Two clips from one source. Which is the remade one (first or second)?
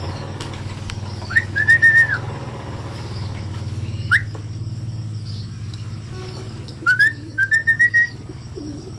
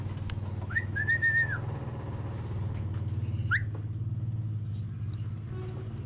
first